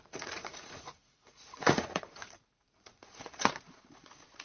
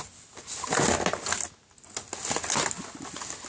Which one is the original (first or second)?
second